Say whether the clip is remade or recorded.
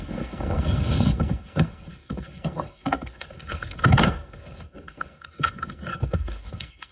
remade